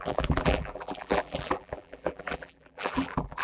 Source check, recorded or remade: remade